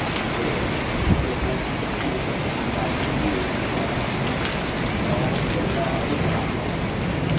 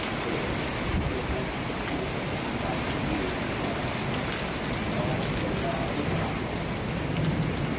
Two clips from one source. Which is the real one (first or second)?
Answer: first